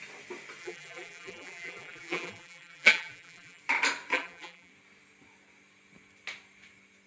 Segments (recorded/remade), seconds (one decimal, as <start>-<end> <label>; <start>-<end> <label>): 0.0-0.6 recorded; 0.6-3.6 remade; 3.6-4.1 recorded; 4.1-4.7 remade; 4.7-7.1 recorded